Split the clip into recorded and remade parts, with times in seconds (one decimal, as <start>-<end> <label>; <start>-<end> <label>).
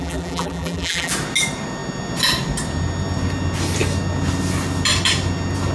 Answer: 0.0-1.1 remade; 1.1-5.7 recorded